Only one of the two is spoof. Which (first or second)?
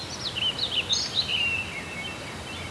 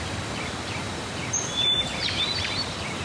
second